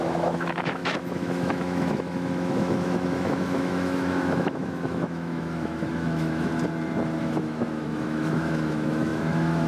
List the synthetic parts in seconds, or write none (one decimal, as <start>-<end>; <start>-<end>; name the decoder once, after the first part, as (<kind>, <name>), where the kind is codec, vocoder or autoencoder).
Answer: 0.0-6.5 (autoencoder, DAC-VAE); 7.2-9.7